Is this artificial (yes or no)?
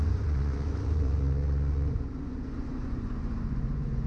yes